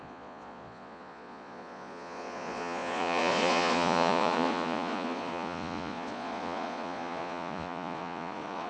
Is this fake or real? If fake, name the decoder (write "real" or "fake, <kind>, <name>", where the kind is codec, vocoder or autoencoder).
fake, vocoder, Vocos